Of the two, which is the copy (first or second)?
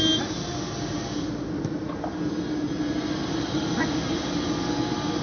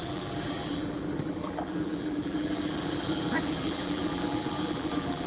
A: second